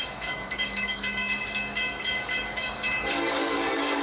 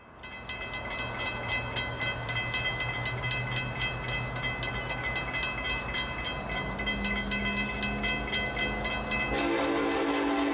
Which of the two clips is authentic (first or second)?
second